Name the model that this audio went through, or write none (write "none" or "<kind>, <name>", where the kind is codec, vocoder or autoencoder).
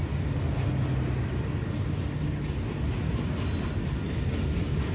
none